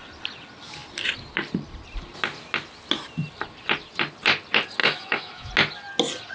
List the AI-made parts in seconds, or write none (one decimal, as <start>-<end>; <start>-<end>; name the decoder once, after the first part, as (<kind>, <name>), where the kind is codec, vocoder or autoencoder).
4.8-5.5 (autoencoder, DAC-VAE)